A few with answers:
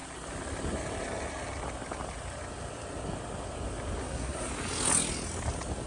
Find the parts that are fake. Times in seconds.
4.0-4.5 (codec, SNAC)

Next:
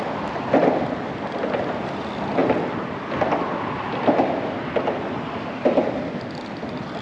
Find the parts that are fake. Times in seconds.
none

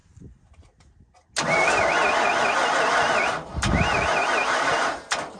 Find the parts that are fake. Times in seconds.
none

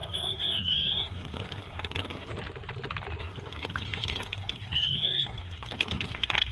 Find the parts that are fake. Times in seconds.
0.0-2.3 (codec, SNAC); 3.2-6.5

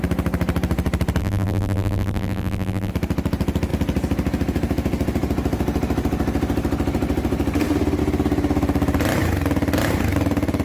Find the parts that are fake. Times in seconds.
1.2-2.9 (vocoder, BigVGAN v2)